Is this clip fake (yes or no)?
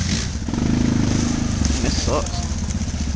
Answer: no